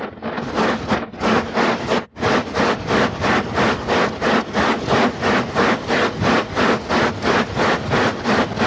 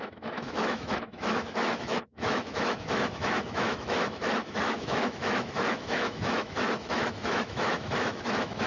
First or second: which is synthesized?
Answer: second